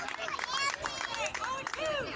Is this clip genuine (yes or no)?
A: yes